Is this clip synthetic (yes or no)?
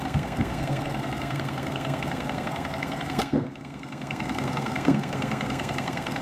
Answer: yes